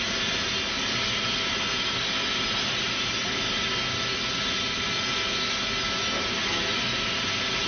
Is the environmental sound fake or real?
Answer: real